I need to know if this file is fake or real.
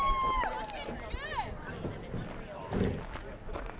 real